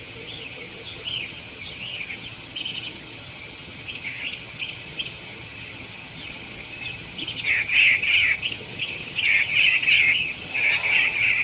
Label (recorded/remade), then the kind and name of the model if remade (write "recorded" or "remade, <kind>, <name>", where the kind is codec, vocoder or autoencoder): remade, vocoder, HiFi-GAN